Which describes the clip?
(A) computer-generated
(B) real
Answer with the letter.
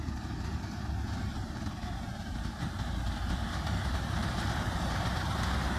A